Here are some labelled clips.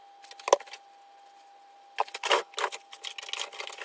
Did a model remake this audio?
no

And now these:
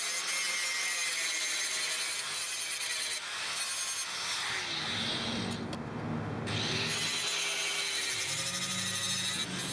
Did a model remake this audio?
no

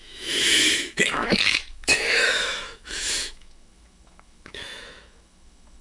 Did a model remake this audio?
yes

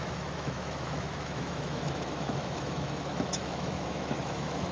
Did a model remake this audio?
yes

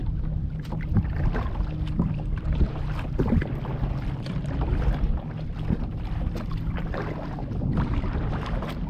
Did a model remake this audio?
no